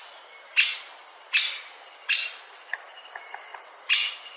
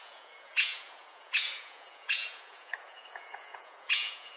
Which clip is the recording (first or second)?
first